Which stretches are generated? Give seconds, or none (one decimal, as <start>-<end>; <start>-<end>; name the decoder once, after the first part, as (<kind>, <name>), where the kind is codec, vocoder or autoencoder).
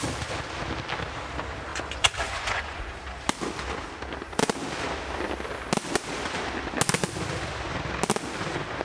1.7-2.9 (vocoder, Vocos)